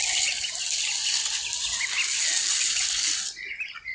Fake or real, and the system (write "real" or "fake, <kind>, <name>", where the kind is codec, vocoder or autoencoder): real